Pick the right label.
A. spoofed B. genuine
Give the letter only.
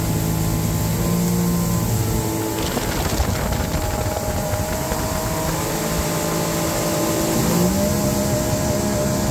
B